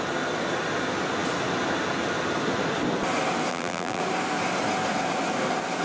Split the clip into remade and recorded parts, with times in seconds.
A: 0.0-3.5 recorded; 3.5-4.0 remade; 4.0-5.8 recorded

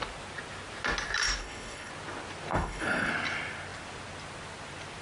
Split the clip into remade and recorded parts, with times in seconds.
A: 0.0-1.4 recorded; 1.4-1.9 remade; 1.9-2.5 recorded; 2.5-3.1 remade; 3.1-5.0 recorded

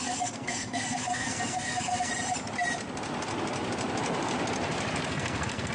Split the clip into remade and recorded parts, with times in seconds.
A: 0.0-2.1 remade; 2.1-5.1 recorded; 5.1-5.7 remade